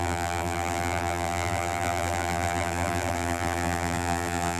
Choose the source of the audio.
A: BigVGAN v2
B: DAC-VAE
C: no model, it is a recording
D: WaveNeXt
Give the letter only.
A